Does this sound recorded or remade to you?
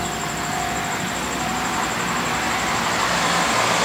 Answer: recorded